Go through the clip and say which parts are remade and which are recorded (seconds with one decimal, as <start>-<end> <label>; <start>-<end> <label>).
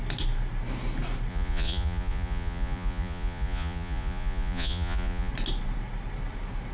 0.0-1.3 recorded; 1.3-5.3 remade; 5.3-6.7 recorded